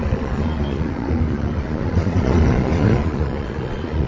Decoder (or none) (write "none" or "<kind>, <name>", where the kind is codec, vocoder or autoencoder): vocoder, Vocos